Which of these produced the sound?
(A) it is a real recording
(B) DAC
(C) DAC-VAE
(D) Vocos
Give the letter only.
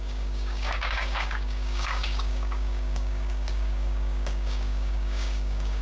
B